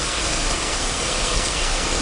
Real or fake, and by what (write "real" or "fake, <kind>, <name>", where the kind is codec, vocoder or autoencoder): fake, codec, SNAC